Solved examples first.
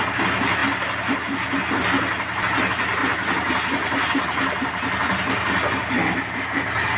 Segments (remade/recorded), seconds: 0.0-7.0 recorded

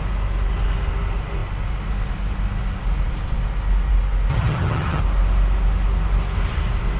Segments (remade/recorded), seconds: 0.0-4.3 recorded; 4.3-5.0 remade; 5.0-7.0 recorded

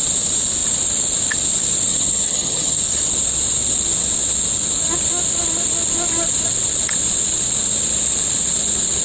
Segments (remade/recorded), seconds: 0.0-1.9 recorded; 1.9-2.8 remade; 2.8-9.0 recorded

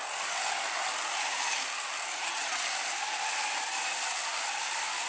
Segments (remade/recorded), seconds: 0.0-2.1 recorded; 2.1-2.6 remade; 2.6-5.1 recorded

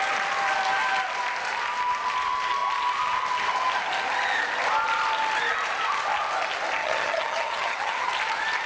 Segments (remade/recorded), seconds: 0.0-6.8 recorded; 6.8-8.1 remade; 8.1-8.7 recorded

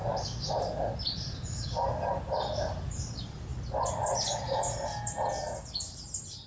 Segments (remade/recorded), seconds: 0.0-6.5 recorded

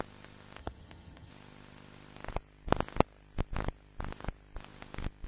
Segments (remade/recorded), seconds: 0.0-0.6 recorded; 0.6-1.3 remade; 1.3-5.3 recorded